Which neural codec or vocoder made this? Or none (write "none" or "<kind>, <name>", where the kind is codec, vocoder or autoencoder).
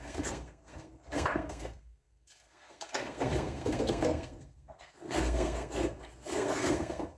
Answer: codec, SNAC